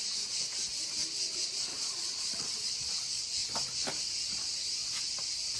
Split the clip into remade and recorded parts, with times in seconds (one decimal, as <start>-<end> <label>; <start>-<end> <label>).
0.0-1.7 recorded; 1.7-2.9 remade; 2.9-5.6 recorded